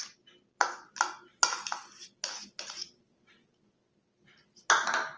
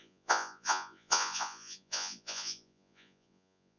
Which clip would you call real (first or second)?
first